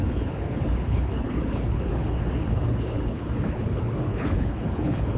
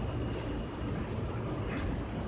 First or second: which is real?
second